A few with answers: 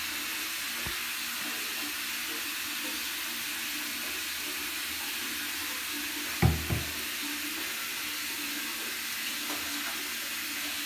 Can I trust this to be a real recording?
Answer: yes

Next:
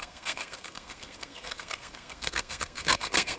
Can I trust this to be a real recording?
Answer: no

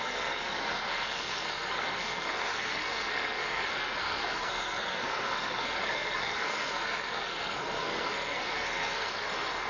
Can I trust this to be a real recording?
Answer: no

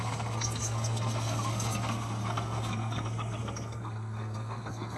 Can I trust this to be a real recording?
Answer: no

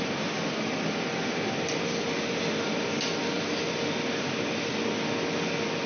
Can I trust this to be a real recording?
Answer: yes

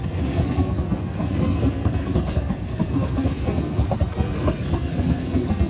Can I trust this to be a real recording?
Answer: no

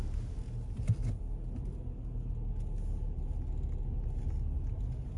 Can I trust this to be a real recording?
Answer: yes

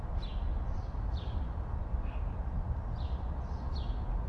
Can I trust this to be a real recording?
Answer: yes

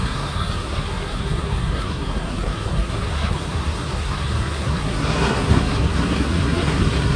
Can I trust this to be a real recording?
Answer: no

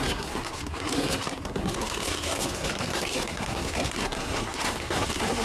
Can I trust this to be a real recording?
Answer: no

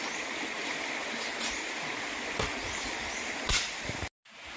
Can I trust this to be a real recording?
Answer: yes